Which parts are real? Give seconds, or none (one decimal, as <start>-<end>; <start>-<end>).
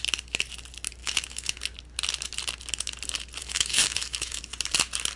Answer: 0.0-1.0; 1.6-3.4; 4.4-5.2